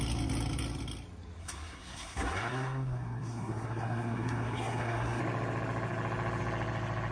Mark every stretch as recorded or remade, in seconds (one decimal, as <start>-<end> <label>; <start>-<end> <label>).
0.0-1.4 recorded; 1.4-5.2 remade; 5.2-7.1 recorded